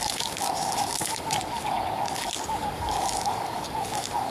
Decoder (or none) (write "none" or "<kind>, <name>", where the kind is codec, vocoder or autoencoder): codec, DAC